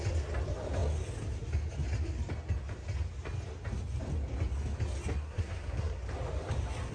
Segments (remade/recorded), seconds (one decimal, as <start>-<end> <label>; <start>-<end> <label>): 0.0-5.2 recorded; 5.2-6.0 remade; 6.0-6.9 recorded